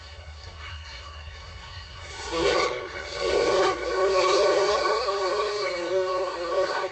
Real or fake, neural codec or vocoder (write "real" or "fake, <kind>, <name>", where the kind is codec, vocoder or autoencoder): fake, codec, SNAC